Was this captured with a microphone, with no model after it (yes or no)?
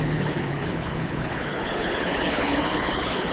no